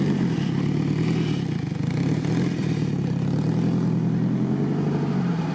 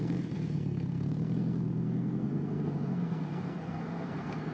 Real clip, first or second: first